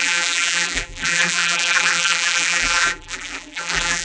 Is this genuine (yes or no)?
no